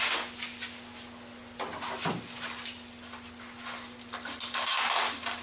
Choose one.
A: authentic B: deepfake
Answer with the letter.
A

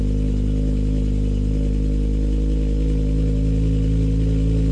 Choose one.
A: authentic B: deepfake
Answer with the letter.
A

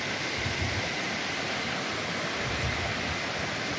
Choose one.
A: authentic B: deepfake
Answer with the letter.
A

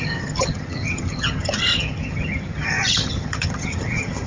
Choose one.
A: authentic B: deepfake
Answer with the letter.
B